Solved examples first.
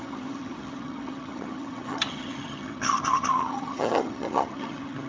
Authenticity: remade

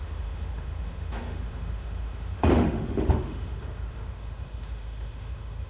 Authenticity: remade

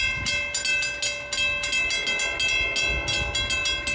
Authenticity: recorded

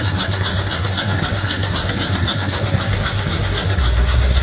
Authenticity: remade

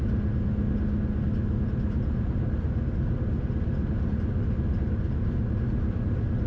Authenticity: recorded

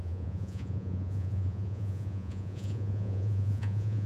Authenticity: remade